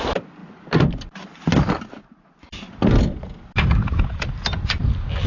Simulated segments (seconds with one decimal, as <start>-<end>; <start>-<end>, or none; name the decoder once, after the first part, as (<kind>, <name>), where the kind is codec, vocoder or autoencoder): none